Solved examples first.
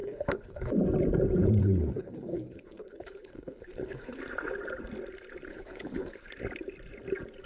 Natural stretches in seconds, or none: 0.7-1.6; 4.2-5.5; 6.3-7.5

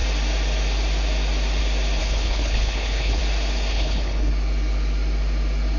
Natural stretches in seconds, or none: 0.0-2.0; 3.2-3.7; 4.3-5.8

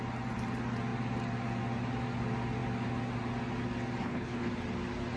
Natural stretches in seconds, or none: 0.0-4.0; 4.5-5.2

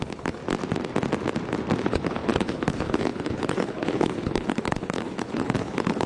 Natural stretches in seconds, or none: 0.4-1.8